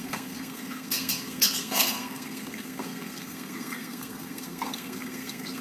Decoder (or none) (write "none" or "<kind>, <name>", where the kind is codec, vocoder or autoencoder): codec, SNAC